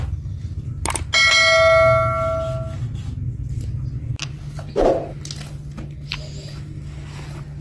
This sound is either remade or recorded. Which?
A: recorded